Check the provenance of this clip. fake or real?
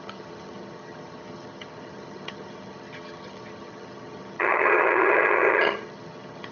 fake